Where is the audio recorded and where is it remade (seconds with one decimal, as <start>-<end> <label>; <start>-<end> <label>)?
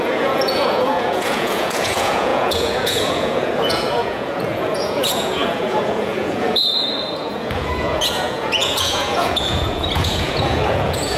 0.0-11.2 remade